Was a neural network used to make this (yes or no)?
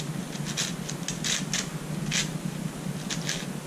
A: no